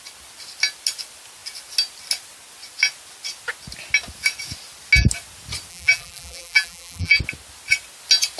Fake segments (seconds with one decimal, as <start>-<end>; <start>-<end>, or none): 5.7-7.2